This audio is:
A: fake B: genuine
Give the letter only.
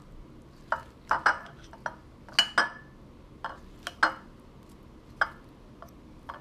B